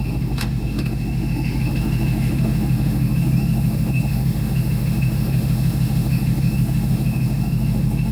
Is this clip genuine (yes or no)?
no